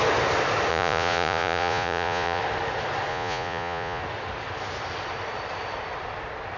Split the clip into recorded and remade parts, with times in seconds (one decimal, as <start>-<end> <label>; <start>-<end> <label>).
0.0-0.7 recorded; 0.7-2.4 remade; 2.4-3.1 recorded; 3.1-4.0 remade; 4.0-6.6 recorded